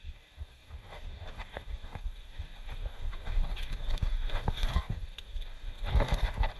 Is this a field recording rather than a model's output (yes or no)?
no